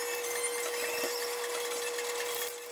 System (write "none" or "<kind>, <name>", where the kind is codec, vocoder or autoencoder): vocoder, BigVGAN v2